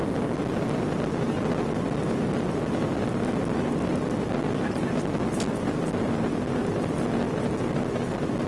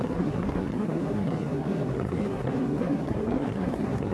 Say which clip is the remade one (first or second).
second